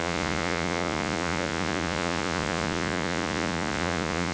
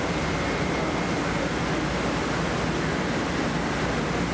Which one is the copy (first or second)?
first